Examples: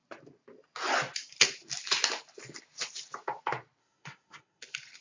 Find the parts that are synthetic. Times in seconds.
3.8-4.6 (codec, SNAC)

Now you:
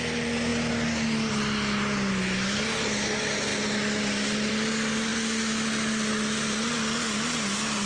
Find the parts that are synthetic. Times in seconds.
none